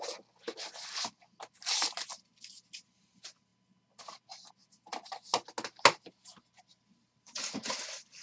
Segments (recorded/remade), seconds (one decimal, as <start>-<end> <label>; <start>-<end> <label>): 0.0-8.2 recorded